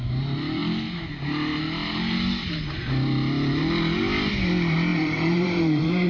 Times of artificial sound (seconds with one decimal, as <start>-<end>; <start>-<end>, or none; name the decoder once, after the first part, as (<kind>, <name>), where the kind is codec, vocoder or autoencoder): 4.9-6.1 (vocoder, BigVGAN v2)